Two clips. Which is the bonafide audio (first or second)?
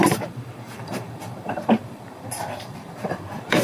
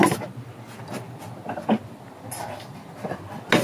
second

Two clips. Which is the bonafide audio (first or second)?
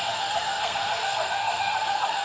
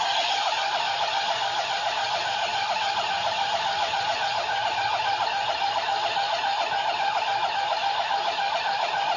second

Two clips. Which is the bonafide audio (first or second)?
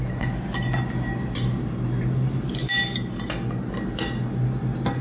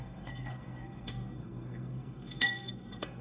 first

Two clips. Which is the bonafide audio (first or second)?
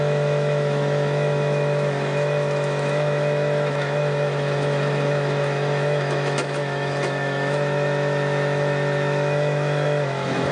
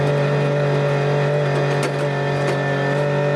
second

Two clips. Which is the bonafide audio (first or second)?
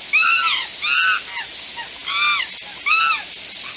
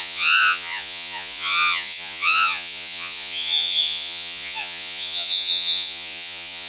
first